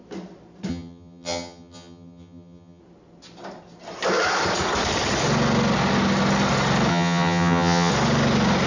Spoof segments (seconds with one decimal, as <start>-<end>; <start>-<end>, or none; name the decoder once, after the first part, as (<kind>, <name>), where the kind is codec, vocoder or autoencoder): 0.7-2.8 (vocoder, HiFi-GAN); 6.9-7.9